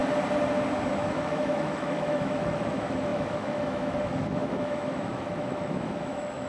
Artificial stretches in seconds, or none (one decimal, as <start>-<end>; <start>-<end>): 1.1-6.5